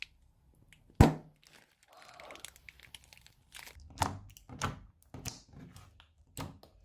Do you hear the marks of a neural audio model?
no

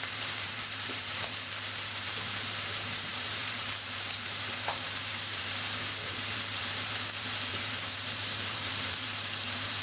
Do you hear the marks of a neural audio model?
yes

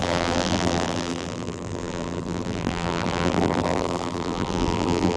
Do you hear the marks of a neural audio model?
yes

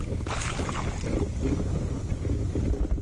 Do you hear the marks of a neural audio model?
no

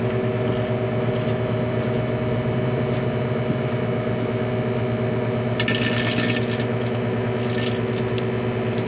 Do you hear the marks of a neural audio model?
no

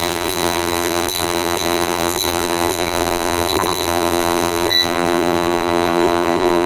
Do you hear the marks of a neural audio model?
yes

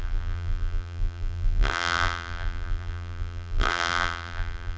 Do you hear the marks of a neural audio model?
yes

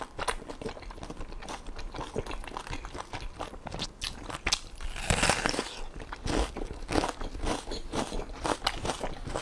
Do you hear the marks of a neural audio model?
no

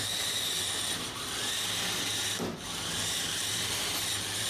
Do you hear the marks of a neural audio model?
yes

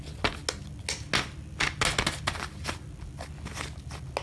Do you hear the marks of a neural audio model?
no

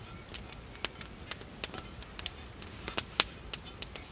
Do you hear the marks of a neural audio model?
no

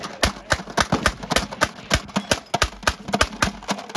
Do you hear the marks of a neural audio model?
no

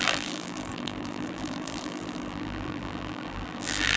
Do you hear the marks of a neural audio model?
yes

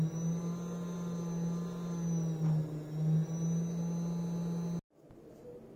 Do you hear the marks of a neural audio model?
no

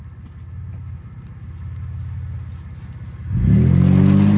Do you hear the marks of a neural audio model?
no